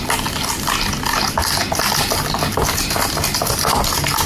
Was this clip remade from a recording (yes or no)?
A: no